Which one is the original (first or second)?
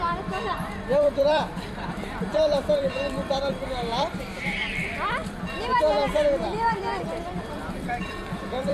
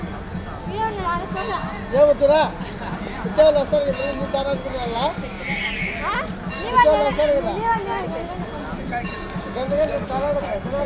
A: second